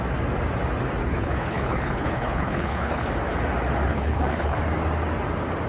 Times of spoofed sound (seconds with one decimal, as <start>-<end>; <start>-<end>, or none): 1.0-3.1; 3.9-4.6